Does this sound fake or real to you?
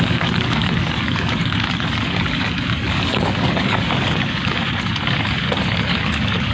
fake